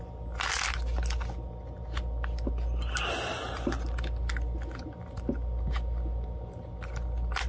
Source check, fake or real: real